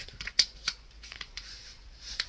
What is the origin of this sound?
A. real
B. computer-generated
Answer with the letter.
B